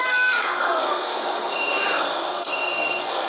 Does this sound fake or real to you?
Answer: fake